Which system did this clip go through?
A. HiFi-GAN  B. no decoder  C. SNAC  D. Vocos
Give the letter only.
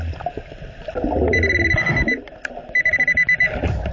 B